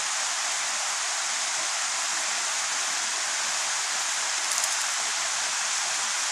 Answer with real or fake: real